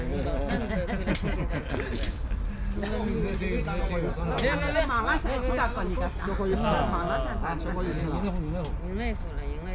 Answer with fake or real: real